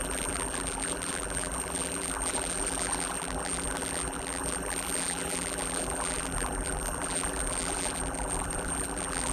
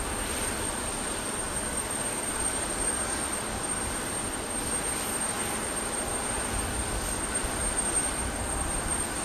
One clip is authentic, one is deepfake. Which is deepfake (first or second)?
first